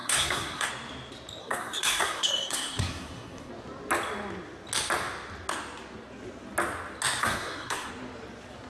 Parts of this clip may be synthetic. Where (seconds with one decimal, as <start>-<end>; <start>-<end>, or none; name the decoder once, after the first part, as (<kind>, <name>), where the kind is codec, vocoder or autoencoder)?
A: 0.0-0.7 (codec, SNAC); 1.4-3.5; 7.2-7.9